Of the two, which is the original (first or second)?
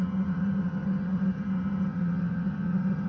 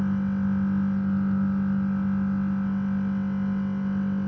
second